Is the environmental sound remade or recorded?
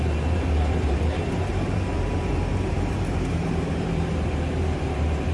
remade